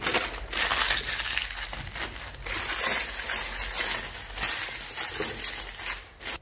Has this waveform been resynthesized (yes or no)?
no